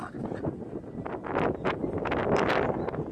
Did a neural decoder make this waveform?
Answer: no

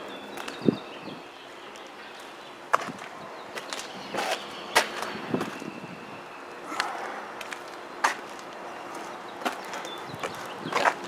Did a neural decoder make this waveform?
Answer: no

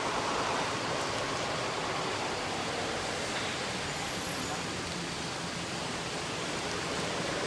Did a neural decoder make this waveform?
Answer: no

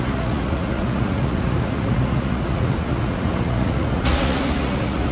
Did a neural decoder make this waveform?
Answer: yes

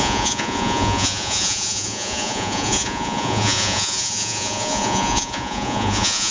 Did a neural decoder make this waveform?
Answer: yes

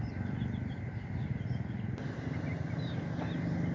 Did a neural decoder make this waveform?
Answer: no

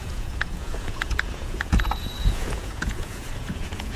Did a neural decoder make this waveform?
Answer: yes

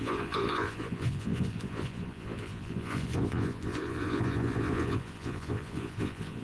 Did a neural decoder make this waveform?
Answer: yes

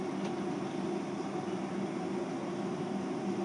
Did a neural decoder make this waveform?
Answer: no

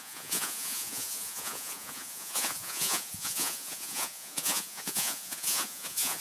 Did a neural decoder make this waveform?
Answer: yes